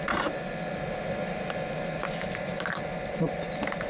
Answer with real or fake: real